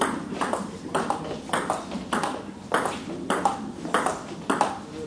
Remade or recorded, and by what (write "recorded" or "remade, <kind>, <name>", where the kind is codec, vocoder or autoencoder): recorded